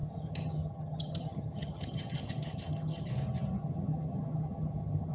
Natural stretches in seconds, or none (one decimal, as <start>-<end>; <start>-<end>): 3.1-3.6